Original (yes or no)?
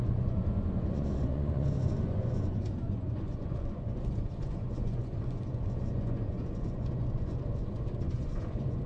no